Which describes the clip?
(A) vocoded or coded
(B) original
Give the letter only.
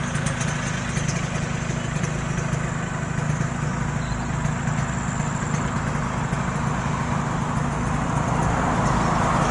B